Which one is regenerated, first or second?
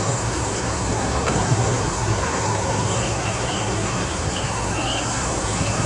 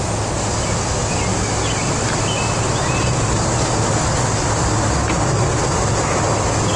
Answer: first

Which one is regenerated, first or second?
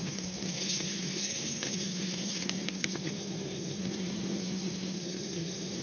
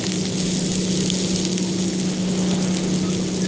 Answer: first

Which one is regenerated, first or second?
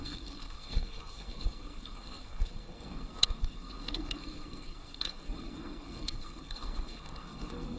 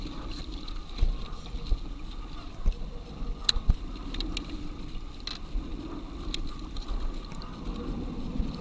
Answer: first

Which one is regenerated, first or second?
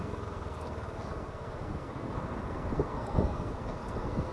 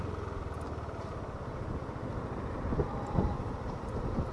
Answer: first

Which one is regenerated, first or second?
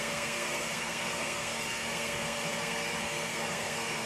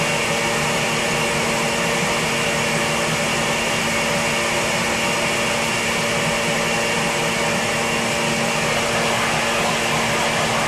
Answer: first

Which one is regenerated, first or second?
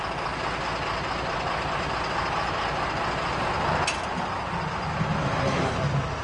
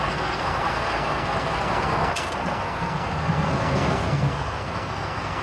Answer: second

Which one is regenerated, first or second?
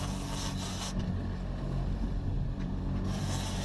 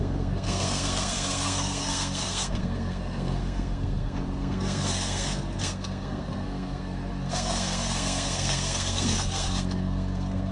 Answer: second